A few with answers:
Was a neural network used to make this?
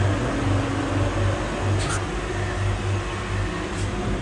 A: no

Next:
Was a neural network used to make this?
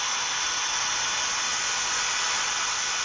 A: no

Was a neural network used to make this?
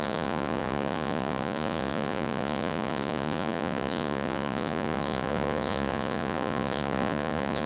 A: yes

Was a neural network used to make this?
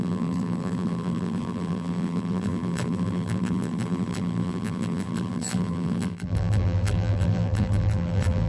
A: yes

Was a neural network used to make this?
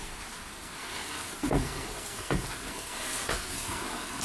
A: yes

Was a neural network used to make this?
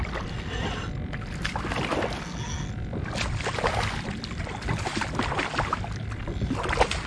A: no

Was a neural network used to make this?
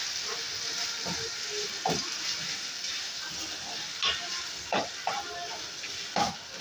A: no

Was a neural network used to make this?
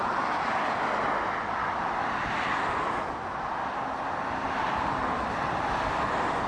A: no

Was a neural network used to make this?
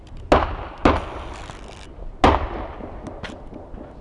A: no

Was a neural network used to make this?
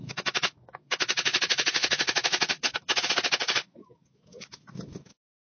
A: yes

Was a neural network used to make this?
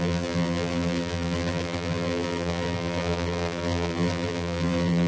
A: yes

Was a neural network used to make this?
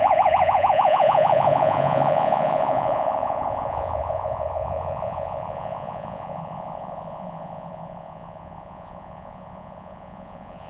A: yes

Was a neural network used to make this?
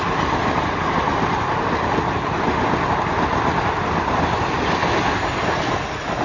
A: no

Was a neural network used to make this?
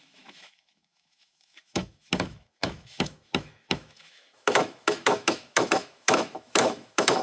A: yes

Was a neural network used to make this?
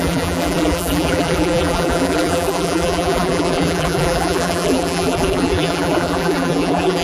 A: yes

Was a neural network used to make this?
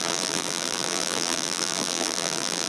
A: yes